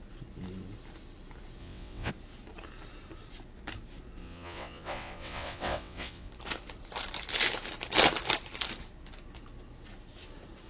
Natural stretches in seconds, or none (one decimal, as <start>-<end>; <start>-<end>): 0.0-1.6; 2.1-4.2; 6.3-10.7